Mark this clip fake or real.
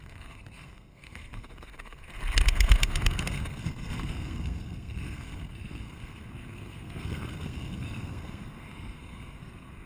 fake